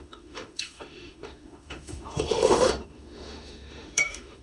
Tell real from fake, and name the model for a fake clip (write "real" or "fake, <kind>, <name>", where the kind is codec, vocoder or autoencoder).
fake, autoencoder, DAC-VAE